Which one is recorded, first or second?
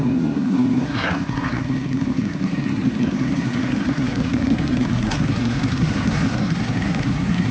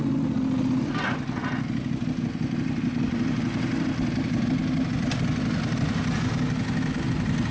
second